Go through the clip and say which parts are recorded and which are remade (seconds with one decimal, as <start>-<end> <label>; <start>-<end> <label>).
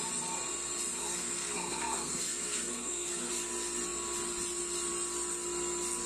0.0-1.0 recorded; 1.0-3.3 remade; 3.3-6.1 recorded